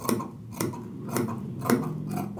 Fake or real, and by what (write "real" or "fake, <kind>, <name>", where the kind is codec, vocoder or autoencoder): fake, vocoder, BigVGAN v2